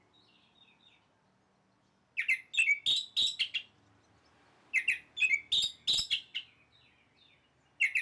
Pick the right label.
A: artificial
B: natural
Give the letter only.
B